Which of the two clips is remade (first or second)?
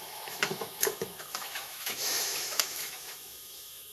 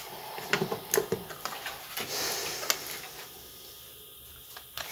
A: first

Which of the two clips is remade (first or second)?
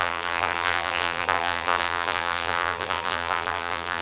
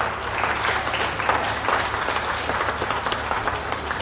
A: first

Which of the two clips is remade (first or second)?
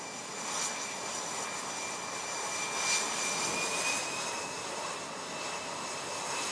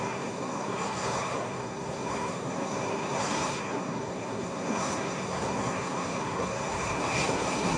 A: second